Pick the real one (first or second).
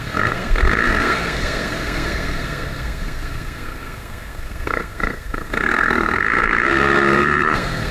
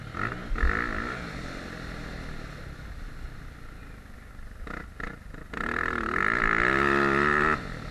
second